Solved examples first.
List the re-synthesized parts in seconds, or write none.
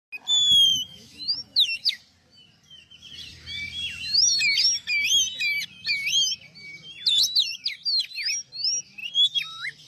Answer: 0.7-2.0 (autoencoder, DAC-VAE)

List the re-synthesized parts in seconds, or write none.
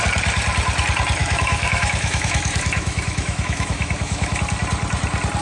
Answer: 1.2-4.4 (autoencoder, DAC-VAE)